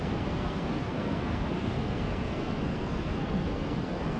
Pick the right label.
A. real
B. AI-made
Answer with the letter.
B